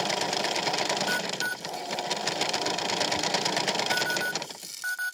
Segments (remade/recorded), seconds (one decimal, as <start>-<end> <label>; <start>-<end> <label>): 0.0-5.1 recorded